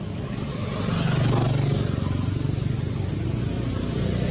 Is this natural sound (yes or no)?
yes